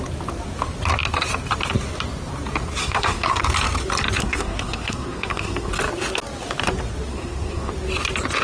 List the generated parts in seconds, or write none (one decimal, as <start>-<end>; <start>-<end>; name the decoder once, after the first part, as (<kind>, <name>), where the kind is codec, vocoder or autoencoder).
2.8-3.4 (codec, SNAC); 4.2-5.7; 7.1-7.7